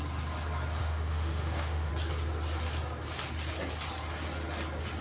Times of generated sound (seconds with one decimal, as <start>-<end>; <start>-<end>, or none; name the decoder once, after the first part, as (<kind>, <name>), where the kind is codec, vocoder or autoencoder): 0.8-1.9 (autoencoder, DAC-VAE)